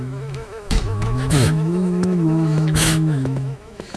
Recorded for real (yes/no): no